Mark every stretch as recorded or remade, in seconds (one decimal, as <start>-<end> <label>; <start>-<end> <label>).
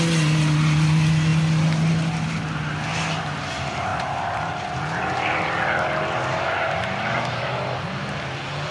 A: 0.0-8.7 recorded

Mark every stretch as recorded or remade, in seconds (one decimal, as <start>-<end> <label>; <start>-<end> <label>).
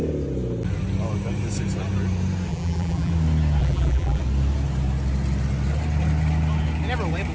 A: 0.0-2.5 recorded; 2.5-3.1 remade; 3.1-3.6 recorded; 3.6-4.2 remade; 4.2-7.3 recorded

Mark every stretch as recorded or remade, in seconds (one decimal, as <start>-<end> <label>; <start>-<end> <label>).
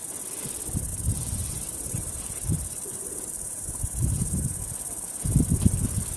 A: 0.0-0.9 recorded; 0.9-4.6 remade; 4.6-6.2 recorded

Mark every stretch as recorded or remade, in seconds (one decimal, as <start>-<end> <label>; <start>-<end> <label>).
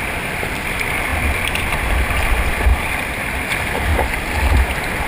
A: 0.0-1.1 remade; 1.1-2.2 recorded; 2.2-3.9 remade; 3.9-5.1 recorded